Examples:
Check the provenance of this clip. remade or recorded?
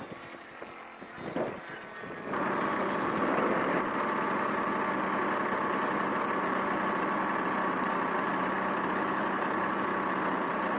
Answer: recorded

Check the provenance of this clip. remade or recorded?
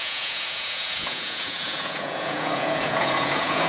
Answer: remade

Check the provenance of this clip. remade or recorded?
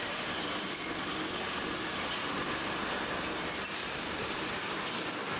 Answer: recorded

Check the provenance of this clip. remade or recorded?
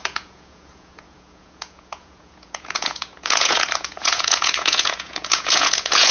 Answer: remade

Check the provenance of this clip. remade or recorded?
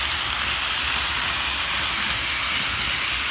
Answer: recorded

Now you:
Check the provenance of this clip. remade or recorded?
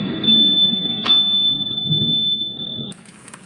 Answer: remade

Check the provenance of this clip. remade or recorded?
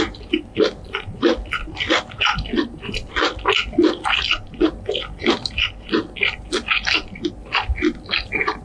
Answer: recorded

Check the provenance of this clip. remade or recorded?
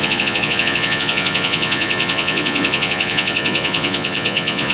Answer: remade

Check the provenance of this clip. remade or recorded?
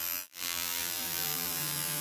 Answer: remade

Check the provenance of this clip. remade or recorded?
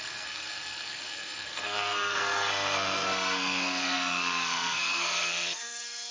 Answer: remade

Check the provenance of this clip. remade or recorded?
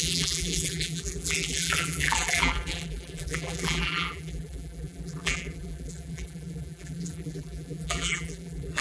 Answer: remade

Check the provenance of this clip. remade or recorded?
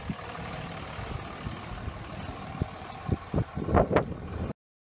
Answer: recorded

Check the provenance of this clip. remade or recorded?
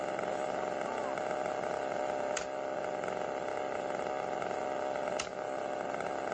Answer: recorded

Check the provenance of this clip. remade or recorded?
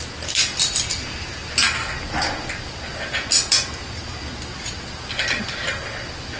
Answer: recorded